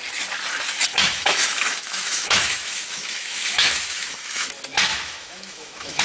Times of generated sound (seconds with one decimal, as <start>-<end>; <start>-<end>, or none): 0.9-4.5; 4.9-6.0